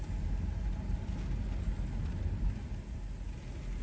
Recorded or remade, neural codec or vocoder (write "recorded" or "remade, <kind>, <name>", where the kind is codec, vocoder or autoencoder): recorded